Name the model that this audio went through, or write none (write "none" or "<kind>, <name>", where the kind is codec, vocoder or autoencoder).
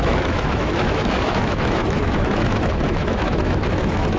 autoencoder, DAC-VAE